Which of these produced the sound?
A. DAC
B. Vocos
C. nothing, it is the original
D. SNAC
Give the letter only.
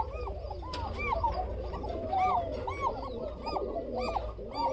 C